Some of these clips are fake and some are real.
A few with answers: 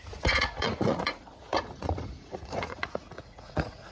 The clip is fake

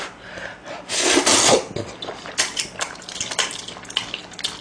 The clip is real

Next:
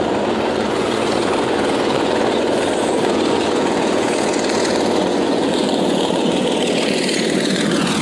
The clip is fake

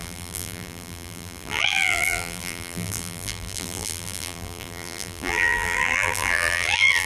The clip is fake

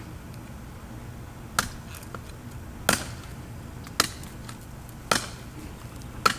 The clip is real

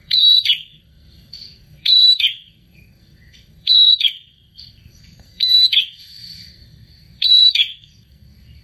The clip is fake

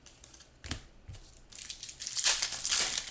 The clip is real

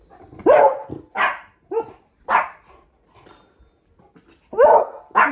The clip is real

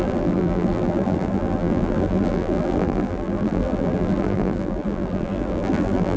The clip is fake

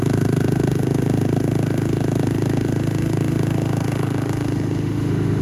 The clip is fake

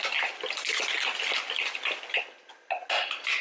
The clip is real